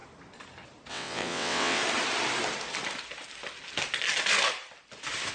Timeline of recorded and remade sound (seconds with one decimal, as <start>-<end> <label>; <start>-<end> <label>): 0.0-0.9 recorded; 0.9-1.8 remade; 1.8-5.3 recorded